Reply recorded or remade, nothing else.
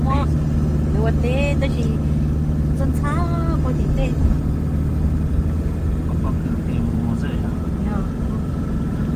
recorded